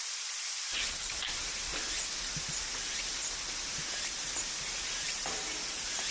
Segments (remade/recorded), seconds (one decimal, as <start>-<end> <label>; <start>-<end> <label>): 0.0-1.7 remade; 1.7-4.6 recorded; 4.6-6.1 remade